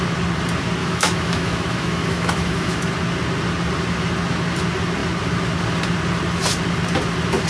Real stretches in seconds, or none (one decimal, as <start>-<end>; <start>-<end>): 0.0-0.8; 2.9-7.5